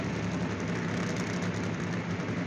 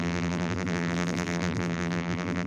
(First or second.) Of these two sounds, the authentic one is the first